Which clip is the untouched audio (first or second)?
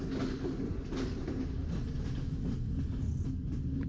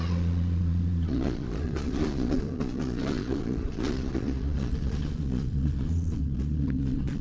first